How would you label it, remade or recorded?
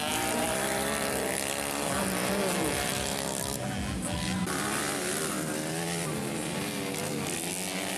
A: recorded